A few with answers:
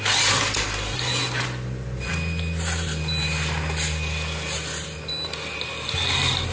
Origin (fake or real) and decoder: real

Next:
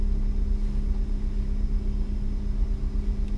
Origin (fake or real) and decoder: real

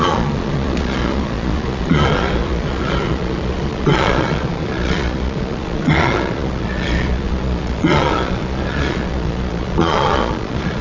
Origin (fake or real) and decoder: fake, vocoder, Vocos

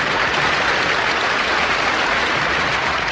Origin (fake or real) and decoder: fake, vocoder, Vocos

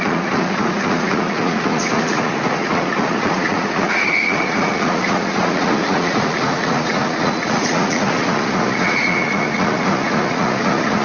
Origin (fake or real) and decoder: fake, vocoder, Vocos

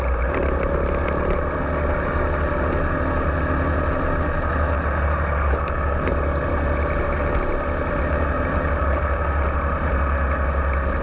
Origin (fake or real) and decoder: real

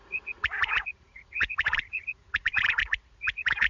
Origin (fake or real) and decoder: fake, vocoder, Vocos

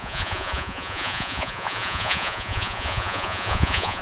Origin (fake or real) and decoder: fake, vocoder, Vocos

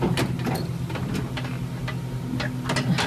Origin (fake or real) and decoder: real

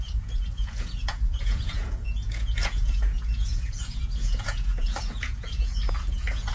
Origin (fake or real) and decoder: fake, vocoder, Vocos